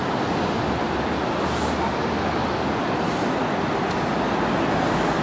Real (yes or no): yes